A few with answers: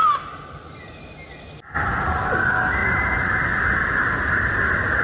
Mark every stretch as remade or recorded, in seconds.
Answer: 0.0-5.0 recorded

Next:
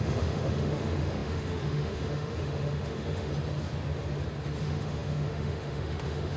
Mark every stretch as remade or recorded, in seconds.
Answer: 0.0-3.3 remade; 3.3-4.6 recorded; 4.6-6.4 remade

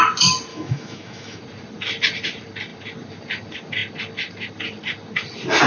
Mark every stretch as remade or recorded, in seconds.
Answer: 0.0-0.5 recorded; 0.5-1.4 remade; 1.4-5.7 recorded

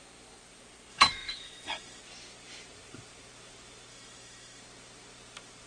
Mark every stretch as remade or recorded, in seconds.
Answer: 0.0-0.9 recorded; 0.9-2.0 remade; 2.0-3.9 recorded; 3.9-4.6 remade; 4.6-5.7 recorded